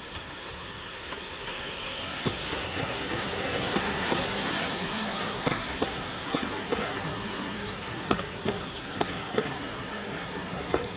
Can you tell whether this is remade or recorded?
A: remade